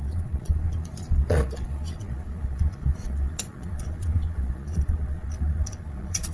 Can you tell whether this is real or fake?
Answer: fake